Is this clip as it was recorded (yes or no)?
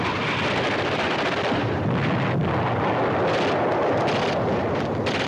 yes